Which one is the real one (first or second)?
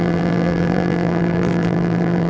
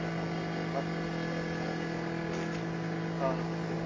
second